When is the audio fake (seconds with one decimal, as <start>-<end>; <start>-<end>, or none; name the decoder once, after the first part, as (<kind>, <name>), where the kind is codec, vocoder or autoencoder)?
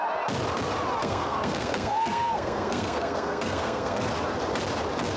1.0-4.1 (codec, SNAC)